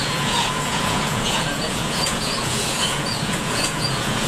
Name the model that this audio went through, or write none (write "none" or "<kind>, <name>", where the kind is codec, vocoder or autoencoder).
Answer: vocoder, Vocos